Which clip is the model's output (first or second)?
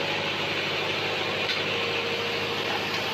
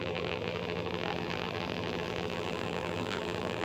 second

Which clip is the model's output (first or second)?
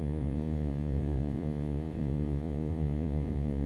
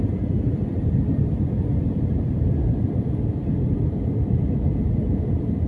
first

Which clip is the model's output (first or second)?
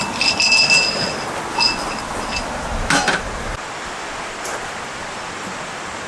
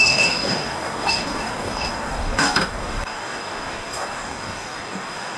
second